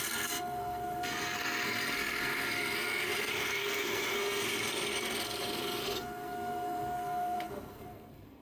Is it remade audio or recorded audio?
remade